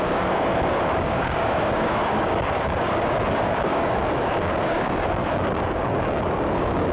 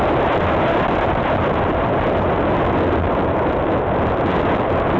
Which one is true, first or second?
second